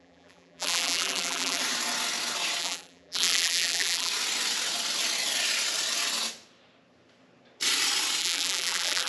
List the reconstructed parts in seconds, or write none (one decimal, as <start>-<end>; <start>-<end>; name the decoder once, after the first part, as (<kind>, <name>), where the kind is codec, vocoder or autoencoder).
0.0-1.6 (vocoder, BigVGAN v2); 2.6-4.1; 8.2-9.1